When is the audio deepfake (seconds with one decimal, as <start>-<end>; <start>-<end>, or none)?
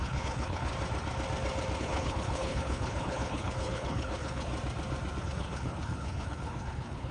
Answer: 0.0-0.7; 1.8-4.5; 5.2-7.1